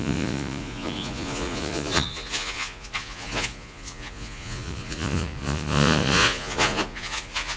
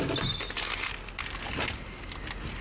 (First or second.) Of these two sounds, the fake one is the first